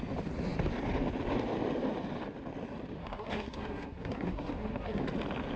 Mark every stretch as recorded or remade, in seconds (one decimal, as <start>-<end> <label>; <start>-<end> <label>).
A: 0.0-3.0 recorded; 3.0-5.0 remade; 5.0-5.6 recorded